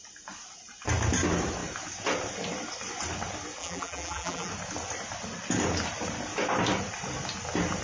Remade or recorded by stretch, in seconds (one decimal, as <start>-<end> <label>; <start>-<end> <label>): 0.0-3.6 recorded; 3.6-4.5 remade; 4.5-7.8 recorded